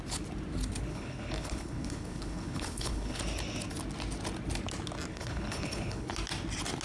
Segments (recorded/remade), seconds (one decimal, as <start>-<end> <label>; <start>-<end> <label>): 0.0-0.9 recorded; 0.9-3.2 remade; 3.2-5.1 recorded; 5.1-6.1 remade; 6.1-6.8 recorded